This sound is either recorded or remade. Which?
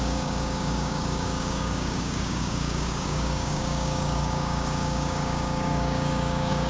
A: remade